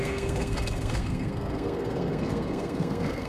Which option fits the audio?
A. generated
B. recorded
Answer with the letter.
A